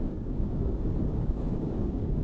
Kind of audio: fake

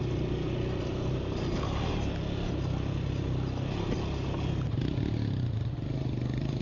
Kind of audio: real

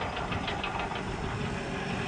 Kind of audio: real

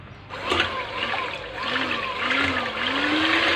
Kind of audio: real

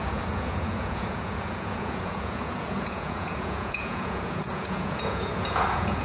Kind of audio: fake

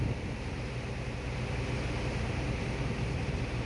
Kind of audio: real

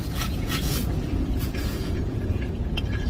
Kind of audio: fake